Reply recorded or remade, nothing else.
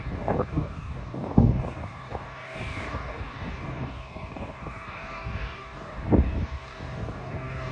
remade